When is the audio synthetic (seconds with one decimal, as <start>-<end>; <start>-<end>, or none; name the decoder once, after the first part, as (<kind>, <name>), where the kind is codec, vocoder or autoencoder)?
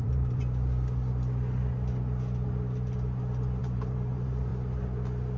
0.0-0.4 (vocoder, BigVGAN v2); 3.6-4.5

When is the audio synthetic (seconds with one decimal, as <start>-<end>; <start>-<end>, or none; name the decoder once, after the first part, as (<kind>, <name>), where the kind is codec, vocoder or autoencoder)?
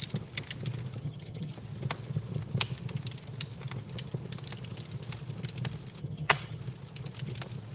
1.0-1.5 (vocoder, HiFi-GAN); 6.0-6.6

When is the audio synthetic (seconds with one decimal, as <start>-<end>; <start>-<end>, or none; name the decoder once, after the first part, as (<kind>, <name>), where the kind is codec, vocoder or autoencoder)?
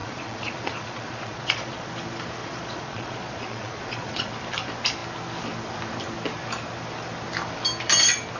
0.0-1.9 (vocoder, Vocos); 2.4-4.3